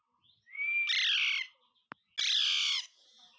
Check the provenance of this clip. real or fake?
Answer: real